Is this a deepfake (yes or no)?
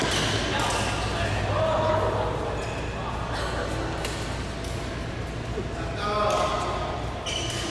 no